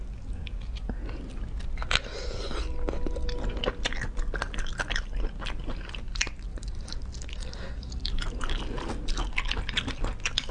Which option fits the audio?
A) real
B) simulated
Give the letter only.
A